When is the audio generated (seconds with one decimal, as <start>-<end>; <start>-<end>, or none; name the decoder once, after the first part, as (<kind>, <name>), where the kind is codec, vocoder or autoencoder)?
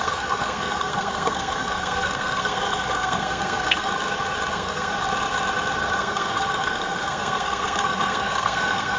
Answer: 0.0-3.9 (codec, SNAC); 4.5-4.9; 6.0-9.0